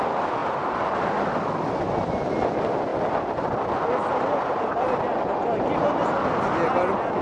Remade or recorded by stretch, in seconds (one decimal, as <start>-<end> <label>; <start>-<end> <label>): 0.0-0.4 recorded; 0.4-1.3 remade; 1.3-4.0 recorded; 4.0-4.7 remade; 4.7-7.2 recorded